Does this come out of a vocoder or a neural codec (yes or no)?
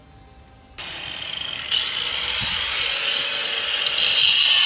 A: no